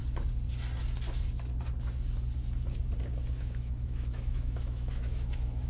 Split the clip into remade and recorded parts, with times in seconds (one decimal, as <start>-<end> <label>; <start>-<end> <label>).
0.0-3.4 recorded; 3.4-5.7 remade